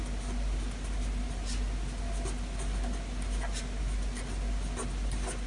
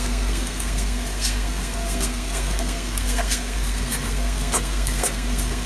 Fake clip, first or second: second